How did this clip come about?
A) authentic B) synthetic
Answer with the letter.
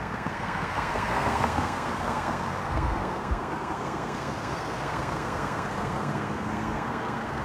B